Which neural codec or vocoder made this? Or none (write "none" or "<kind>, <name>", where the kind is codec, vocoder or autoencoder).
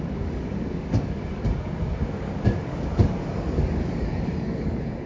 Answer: codec, DAC